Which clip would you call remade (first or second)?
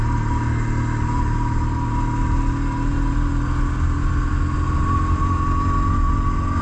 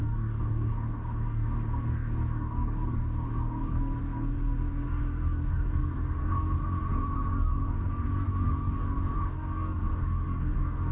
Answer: second